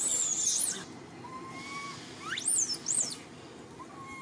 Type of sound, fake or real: real